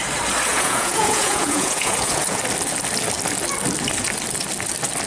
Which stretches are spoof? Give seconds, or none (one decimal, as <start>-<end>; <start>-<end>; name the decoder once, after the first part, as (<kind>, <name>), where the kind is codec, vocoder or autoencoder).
0.5-2.4 (vocoder, Vocos)